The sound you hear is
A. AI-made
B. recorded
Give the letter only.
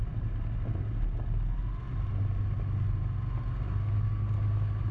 B